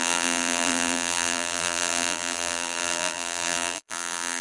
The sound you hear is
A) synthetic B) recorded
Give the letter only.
A